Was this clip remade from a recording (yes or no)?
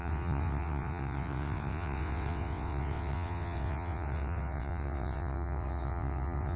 yes